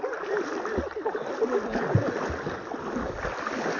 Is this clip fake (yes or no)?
no